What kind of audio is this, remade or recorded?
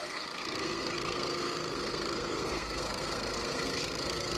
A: remade